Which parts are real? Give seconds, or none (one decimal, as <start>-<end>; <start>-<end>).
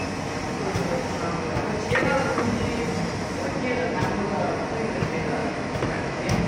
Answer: 0.0-5.4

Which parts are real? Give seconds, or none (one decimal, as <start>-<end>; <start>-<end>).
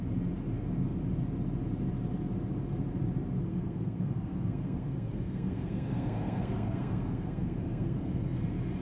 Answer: 0.0-3.5; 8.4-8.8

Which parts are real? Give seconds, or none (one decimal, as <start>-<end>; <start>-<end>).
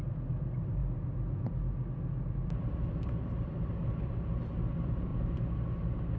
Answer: 0.8-2.4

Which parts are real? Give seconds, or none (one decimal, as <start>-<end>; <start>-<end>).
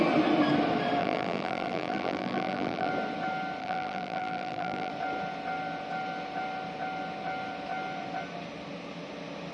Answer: 0.0-1.0; 2.9-3.6; 4.9-9.5